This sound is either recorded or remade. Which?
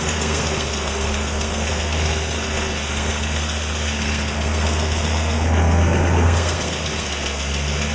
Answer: remade